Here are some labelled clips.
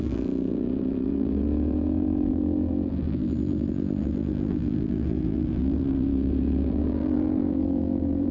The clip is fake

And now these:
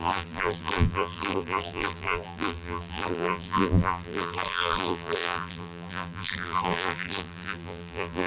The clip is fake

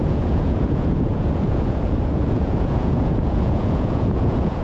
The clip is fake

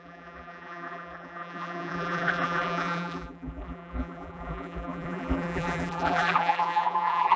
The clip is fake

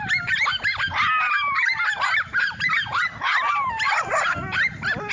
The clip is fake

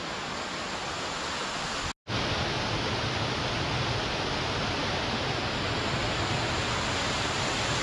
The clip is real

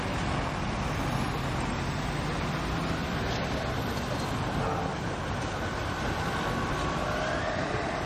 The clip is real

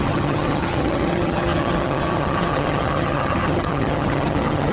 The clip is fake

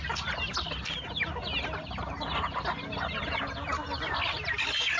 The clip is real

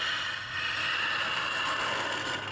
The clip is real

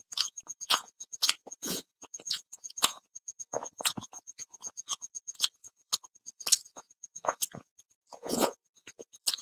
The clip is fake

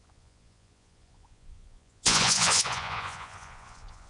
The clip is fake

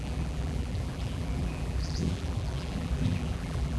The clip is fake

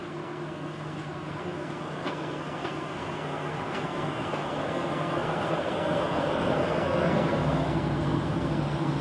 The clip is fake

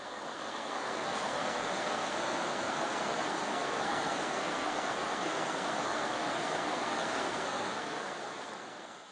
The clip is fake